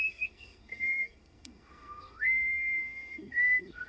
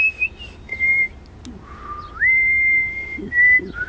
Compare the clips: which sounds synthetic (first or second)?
first